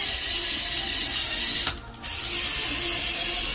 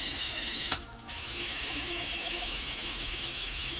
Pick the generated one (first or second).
second